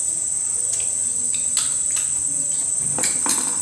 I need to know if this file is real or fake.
real